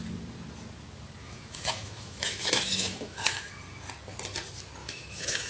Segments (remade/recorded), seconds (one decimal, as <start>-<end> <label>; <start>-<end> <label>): 0.0-1.2 recorded; 1.2-3.5 remade; 3.5-4.8 recorded; 4.8-5.5 remade